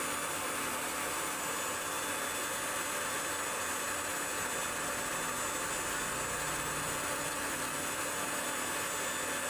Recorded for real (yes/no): yes